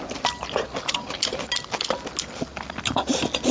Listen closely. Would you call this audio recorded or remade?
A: recorded